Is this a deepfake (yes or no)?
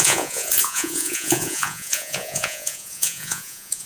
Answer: yes